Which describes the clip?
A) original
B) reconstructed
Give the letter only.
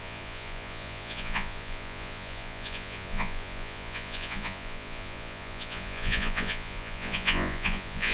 B